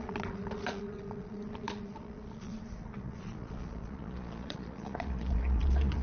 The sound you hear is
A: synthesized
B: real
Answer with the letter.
A